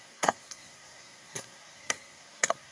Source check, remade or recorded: remade